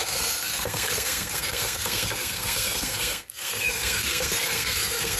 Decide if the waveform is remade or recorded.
remade